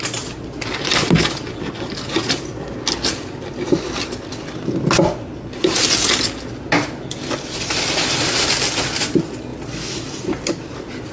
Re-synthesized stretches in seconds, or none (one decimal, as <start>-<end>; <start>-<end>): none